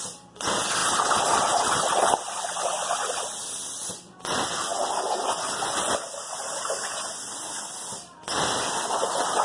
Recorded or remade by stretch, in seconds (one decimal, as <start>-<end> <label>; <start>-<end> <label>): 0.0-9.4 recorded